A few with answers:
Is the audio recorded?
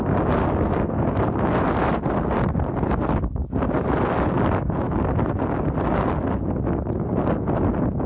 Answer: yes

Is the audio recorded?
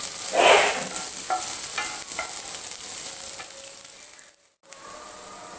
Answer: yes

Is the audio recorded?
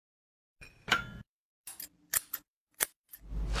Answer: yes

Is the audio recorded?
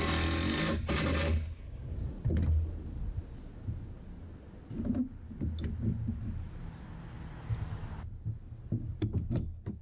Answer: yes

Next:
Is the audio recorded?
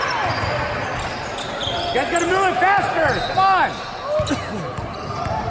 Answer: yes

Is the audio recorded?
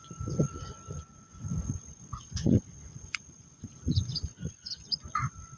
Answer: no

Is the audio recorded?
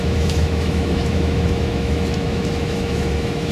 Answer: no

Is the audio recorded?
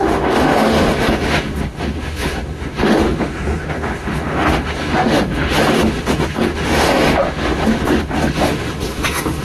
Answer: no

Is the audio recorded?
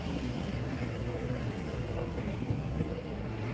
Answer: no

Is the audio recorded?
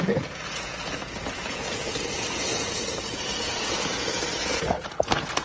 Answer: no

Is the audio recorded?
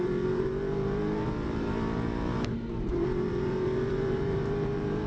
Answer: no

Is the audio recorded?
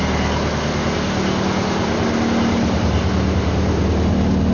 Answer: yes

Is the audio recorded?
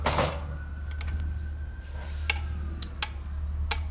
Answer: yes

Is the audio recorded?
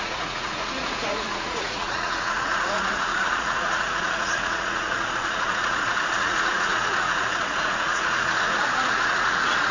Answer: no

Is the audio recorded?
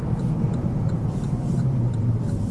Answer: no